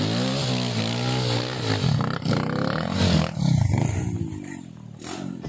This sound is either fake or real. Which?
real